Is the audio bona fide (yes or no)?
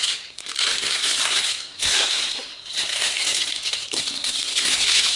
no